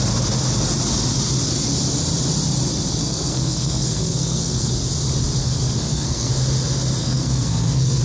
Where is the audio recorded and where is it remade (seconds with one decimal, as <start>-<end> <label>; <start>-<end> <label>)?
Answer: 0.0-3.0 recorded; 3.0-4.7 remade; 4.7-5.4 recorded; 5.4-6.3 remade; 6.3-7.0 recorded; 7.0-8.0 remade